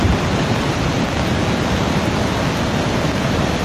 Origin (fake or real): real